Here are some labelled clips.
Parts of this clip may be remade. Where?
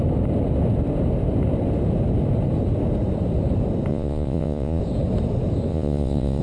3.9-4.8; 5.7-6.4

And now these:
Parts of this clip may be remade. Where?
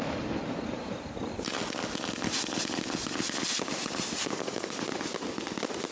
4.2-4.8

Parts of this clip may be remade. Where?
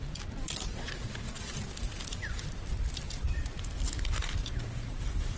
0.7-1.5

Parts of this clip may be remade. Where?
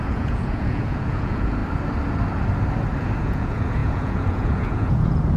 0.0-1.6; 3.2-5.4